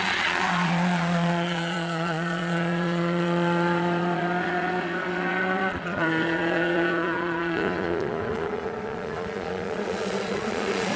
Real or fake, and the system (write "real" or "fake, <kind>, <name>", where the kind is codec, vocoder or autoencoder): fake, vocoder, Vocos